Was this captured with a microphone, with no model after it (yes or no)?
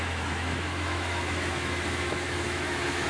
no